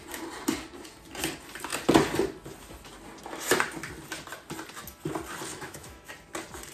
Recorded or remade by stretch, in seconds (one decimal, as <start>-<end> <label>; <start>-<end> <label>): 0.0-5.5 recorded; 5.5-6.1 remade; 6.1-6.7 recorded